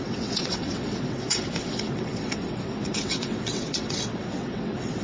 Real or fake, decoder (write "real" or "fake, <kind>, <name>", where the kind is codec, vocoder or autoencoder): fake, vocoder, WaveNeXt